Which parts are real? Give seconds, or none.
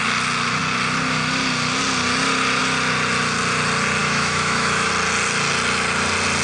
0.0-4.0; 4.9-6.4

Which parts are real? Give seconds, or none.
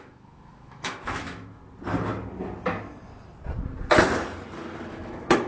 1.6-4.9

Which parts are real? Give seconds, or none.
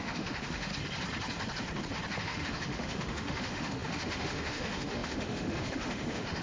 0.7-2.2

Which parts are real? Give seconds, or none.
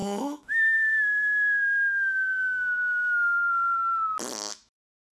3.8-4.5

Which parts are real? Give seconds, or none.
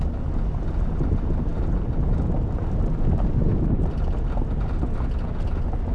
0.0-5.9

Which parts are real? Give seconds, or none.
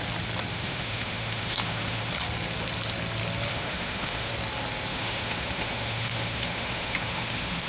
0.0-0.5; 2.1-3.5; 4.3-4.9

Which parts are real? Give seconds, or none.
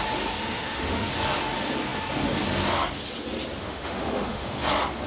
0.0-0.4; 1.1-3.6; 4.6-5.1